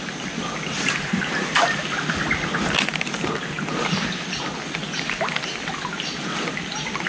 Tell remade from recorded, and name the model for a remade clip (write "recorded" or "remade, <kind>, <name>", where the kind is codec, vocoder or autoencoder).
recorded